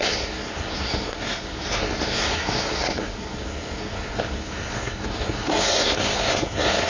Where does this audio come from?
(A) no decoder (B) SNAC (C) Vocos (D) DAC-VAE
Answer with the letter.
B